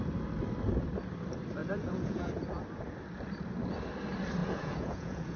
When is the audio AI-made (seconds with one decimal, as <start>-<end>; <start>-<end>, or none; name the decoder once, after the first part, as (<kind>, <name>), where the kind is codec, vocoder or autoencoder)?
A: 1.6-2.3 (vocoder, Vocos); 4.4-5.4